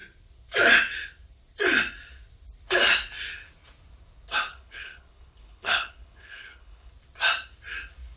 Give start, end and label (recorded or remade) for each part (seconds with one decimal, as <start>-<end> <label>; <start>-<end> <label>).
0.0-4.5 recorded; 4.5-6.9 remade; 6.9-8.2 recorded